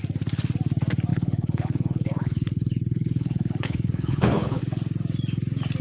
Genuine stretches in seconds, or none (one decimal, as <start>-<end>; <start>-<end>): 0.0-1.1; 4.6-5.8